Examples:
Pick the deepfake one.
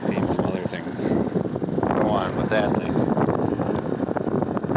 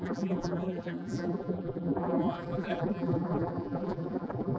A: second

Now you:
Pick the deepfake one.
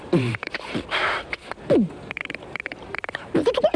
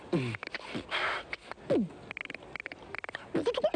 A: first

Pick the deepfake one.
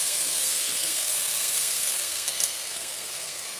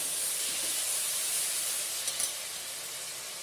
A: first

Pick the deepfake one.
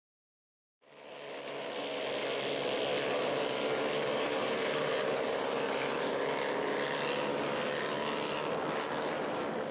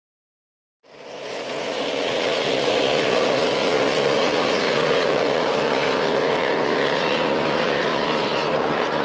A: second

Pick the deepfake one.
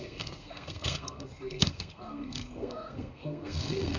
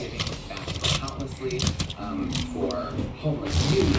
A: first